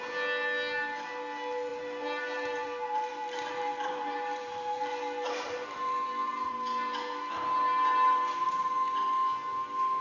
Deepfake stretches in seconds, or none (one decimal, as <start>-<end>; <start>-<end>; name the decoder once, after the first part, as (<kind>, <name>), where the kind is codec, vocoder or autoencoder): 1.7-6.5 (vocoder, BigVGAN v2)